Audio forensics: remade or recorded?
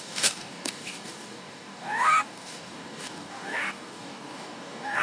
remade